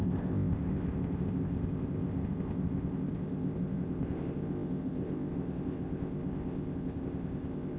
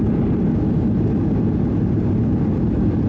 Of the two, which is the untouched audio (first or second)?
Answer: second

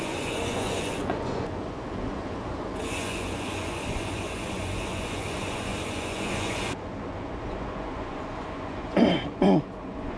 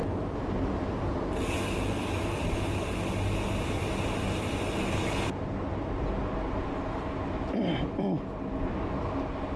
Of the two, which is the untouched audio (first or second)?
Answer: second